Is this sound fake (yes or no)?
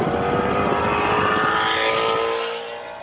no